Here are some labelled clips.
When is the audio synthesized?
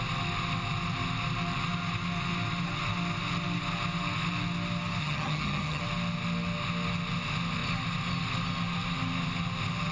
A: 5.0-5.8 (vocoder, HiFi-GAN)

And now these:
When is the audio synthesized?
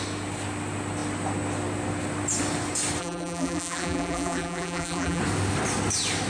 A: 3.0-5.2 (vocoder, BigVGAN v2)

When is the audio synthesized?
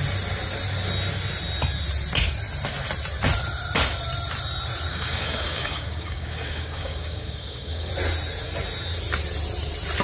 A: 4.9-7.9 (codec, DAC)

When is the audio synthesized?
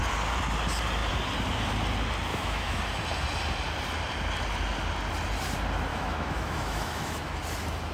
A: 2.3-2.8 (autoencoder, DAC-VAE); 5.9-7.3